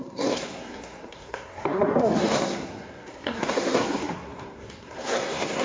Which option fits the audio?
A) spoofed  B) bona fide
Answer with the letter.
A